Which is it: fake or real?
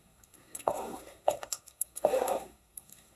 fake